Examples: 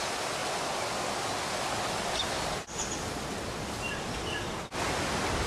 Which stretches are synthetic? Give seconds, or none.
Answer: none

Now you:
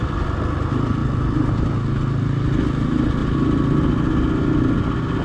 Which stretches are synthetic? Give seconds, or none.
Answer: none

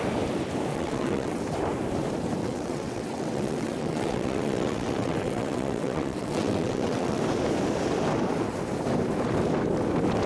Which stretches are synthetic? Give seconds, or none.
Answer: 0.7-1.4 (vocoder, WaveNeXt); 2.4-7.2

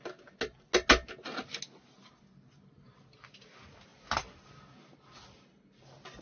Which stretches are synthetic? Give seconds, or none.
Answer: none

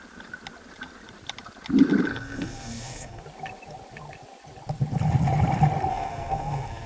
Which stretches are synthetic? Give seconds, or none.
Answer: 2.1-3.2 (codec, SNAC); 5.9-6.9

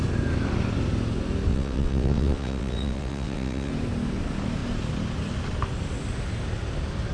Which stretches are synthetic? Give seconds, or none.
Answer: 1.5-3.7 (vocoder, WaveNeXt)